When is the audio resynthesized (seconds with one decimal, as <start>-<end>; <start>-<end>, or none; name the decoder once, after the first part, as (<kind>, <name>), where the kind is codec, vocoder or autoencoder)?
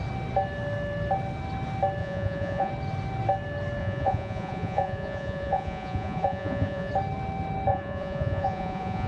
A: 2.0-2.7 (vocoder, Vocos); 3.8-6.9; 7.7-9.1